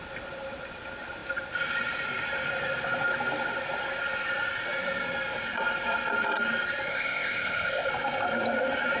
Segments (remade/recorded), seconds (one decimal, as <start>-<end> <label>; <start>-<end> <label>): 0.0-6.9 recorded; 6.9-7.9 remade; 7.9-9.0 recorded